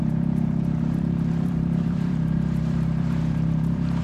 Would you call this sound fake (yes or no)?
yes